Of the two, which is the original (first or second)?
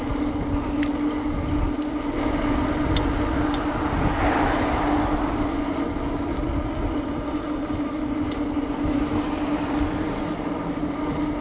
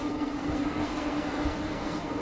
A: first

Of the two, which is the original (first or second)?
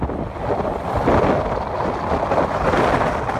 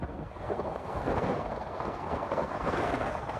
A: first